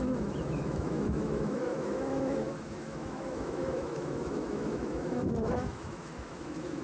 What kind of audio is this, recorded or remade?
remade